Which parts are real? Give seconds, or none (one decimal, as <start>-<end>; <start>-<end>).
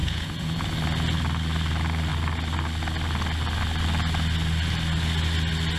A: 0.7-5.8